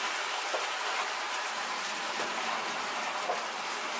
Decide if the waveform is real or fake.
fake